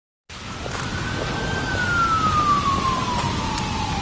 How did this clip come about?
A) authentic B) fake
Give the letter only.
A